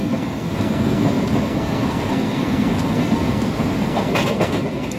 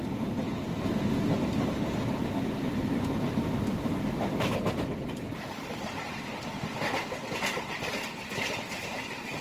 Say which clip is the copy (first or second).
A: first